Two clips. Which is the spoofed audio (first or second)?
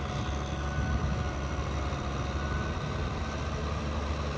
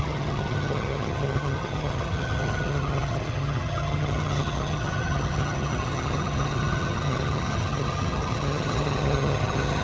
second